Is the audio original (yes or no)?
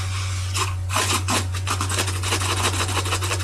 no